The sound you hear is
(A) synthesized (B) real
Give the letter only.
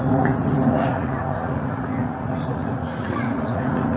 A